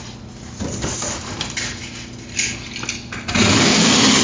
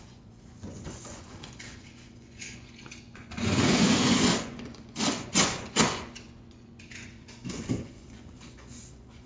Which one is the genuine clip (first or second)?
first